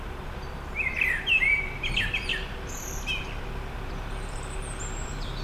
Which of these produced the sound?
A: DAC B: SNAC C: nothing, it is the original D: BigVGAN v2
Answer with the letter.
D